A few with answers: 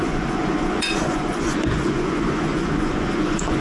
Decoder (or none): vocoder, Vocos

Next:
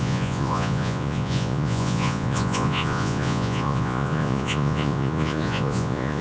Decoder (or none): vocoder, Vocos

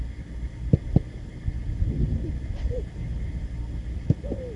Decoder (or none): vocoder, BigVGAN v2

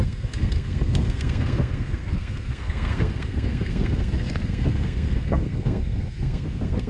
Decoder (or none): codec, SNAC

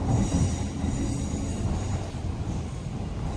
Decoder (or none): none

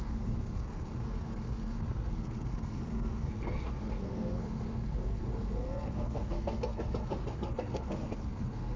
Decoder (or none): codec, SNAC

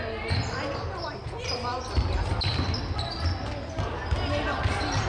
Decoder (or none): none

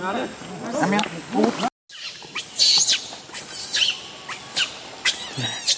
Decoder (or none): none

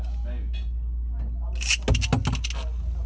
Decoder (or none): none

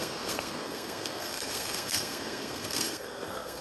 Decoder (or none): codec, SNAC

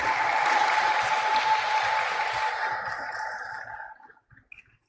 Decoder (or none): none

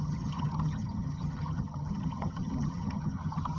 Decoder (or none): vocoder, HiFi-GAN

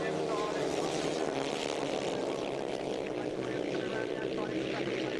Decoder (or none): none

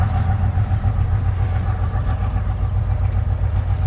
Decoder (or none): none